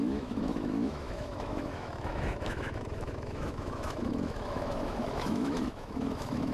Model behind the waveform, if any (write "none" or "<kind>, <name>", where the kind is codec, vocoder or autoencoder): autoencoder, DAC-VAE